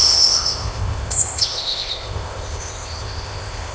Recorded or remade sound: remade